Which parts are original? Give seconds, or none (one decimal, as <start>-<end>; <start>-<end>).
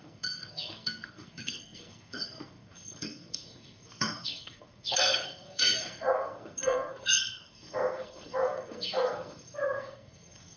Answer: none